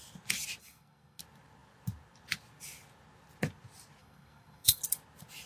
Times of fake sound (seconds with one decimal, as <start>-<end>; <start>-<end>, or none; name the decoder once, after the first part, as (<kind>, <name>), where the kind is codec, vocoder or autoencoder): 0.6-1.2 (codec, SNAC); 4.0-4.8